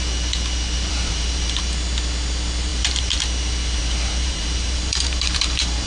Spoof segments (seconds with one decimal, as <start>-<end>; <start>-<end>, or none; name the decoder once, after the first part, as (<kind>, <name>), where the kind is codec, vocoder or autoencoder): 0.9-1.6 (vocoder, BigVGAN v2); 2.7-3.2; 3.8-5.9